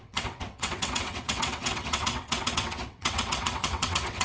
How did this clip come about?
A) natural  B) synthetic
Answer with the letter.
B